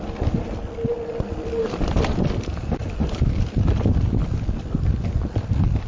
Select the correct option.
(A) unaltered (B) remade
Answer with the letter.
B